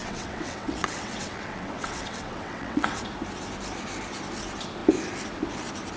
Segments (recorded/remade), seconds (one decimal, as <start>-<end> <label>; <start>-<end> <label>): 0.0-3.0 remade; 3.0-6.0 recorded